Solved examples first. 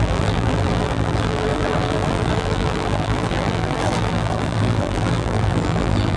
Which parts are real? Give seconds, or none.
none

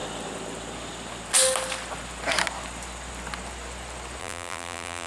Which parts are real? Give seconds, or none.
0.0-4.2

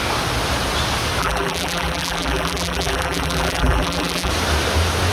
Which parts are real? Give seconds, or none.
0.0-1.2; 4.3-5.1

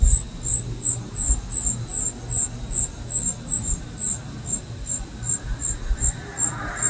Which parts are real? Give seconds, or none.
0.0-6.9

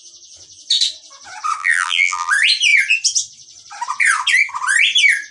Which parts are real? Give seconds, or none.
0.0-1.6; 2.3-5.3

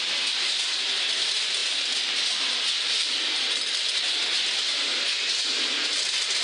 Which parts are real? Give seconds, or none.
0.0-6.4

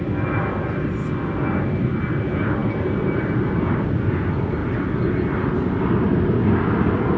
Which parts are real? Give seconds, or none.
0.0-2.6; 3.6-7.2

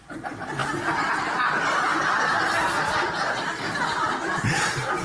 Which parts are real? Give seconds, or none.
0.0-0.6; 1.4-2.8; 3.8-5.0